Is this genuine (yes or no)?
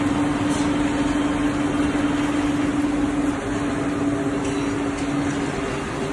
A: yes